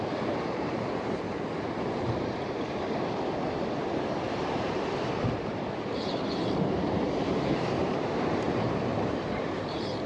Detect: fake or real fake